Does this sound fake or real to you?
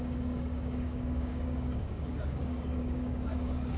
fake